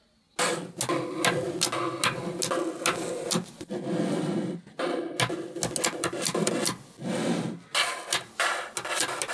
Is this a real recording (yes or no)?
yes